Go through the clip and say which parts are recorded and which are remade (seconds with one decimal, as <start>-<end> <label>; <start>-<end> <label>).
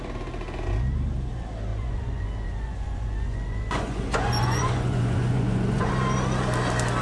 0.0-1.7 recorded; 1.7-5.9 remade; 5.9-7.0 recorded